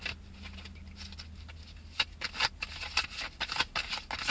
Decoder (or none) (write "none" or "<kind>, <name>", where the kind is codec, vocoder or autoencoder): none